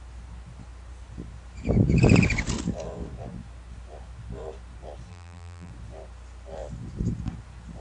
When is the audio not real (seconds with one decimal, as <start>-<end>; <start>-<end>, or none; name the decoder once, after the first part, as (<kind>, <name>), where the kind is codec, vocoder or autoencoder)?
5.1-5.7 (vocoder, BigVGAN v2)